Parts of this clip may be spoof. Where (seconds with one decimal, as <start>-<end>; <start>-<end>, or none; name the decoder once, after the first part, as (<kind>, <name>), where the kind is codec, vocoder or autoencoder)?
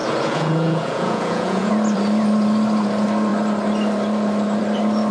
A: 0.0-1.7 (vocoder, Vocos)